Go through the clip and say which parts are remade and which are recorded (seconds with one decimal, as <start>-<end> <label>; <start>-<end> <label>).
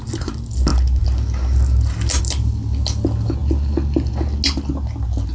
0.0-5.3 recorded